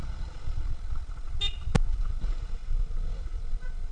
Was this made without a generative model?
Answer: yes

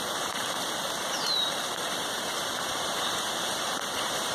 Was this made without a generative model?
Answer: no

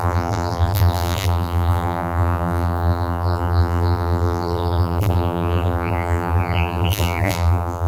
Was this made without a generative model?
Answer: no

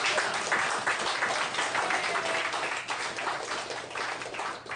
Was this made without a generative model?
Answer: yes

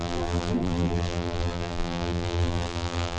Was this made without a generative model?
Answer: no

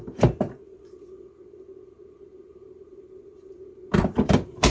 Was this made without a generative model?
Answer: no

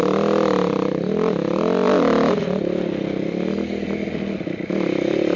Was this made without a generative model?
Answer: yes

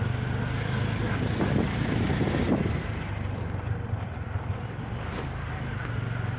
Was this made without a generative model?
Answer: yes